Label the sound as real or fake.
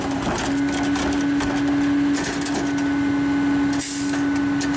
real